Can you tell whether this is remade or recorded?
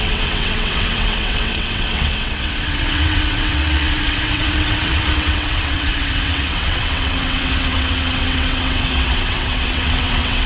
remade